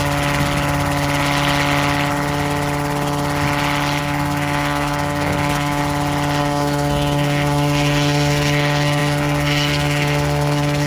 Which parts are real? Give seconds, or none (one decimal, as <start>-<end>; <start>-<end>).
0.0-4.0; 5.8-6.4